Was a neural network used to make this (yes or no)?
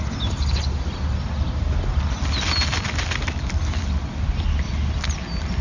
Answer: no